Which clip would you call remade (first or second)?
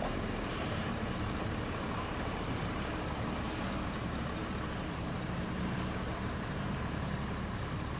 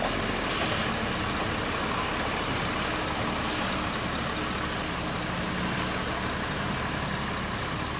first